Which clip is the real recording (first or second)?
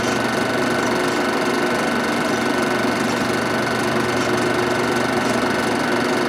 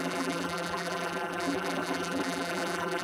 first